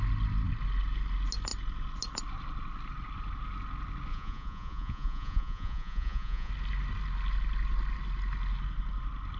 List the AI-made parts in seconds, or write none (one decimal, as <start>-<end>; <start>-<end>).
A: 4.1-6.5